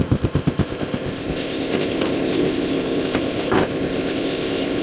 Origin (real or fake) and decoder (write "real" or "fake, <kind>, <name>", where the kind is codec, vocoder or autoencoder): fake, codec, ZipCodec